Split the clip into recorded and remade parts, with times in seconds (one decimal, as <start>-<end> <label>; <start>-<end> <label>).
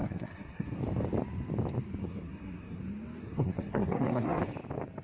0.0-0.8 remade; 0.8-2.0 recorded; 2.0-2.8 remade; 2.8-3.2 recorded; 3.2-4.4 remade; 4.4-5.0 recorded